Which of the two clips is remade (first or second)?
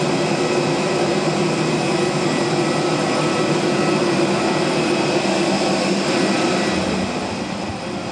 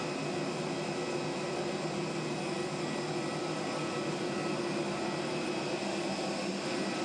first